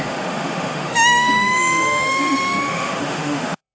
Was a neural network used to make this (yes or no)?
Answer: yes